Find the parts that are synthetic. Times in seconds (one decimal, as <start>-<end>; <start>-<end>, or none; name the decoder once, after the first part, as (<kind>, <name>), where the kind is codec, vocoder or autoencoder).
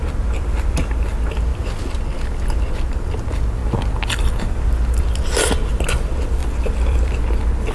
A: 3.6-4.7 (vocoder, BigVGAN v2); 6.4-7.2